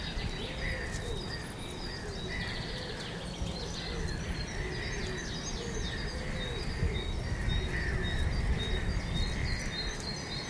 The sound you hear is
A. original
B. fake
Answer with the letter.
A